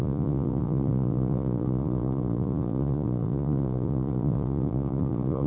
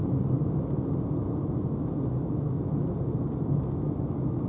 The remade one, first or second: first